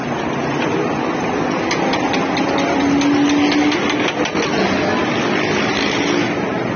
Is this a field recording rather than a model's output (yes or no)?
yes